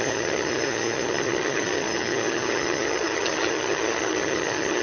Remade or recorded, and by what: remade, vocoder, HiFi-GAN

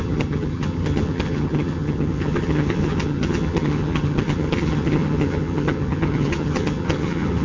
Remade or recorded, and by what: remade, vocoder, HiFi-GAN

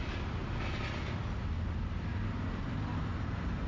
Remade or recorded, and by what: recorded